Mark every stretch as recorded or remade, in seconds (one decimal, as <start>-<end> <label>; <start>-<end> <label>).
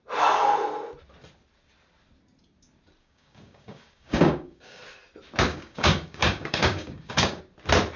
0.0-3.0 recorded; 3.0-4.8 remade; 4.8-5.5 recorded; 5.5-7.4 remade; 7.4-8.0 recorded